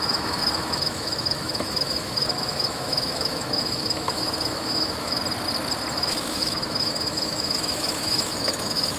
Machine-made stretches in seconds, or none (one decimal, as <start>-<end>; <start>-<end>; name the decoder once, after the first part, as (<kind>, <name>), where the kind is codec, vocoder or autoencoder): 0.0-5.2 (autoencoder, DAC-VAE); 5.9-9.0